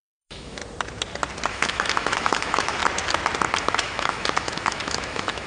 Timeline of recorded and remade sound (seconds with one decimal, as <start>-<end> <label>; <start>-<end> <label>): 0.0-0.6 remade; 0.6-1.5 recorded; 1.5-2.8 remade; 2.8-3.6 recorded; 3.6-5.5 remade